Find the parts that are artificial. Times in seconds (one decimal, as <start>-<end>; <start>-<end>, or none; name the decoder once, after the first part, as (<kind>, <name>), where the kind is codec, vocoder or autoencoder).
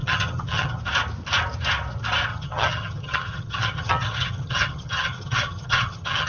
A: 0.0-0.8 (vocoder, HiFi-GAN); 2.3-6.3